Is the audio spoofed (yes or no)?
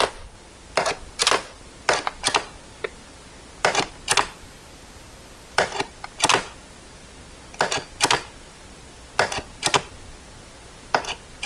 no